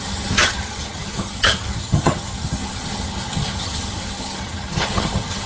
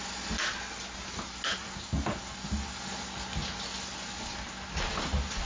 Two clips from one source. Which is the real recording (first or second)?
second